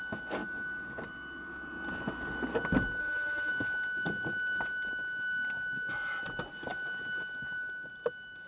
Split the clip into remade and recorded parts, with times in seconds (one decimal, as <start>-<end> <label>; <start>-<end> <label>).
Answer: 0.0-3.0 recorded; 3.0-3.5 remade; 3.5-8.5 recorded